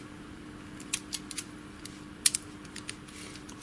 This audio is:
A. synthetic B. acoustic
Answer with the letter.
B